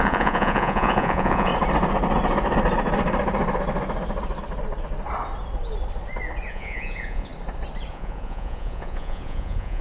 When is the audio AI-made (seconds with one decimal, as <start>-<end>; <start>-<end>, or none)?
0.0-1.5; 6.5-7.3; 7.9-9.8